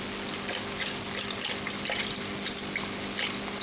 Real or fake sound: real